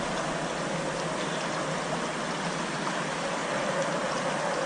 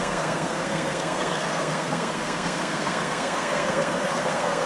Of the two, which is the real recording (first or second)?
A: first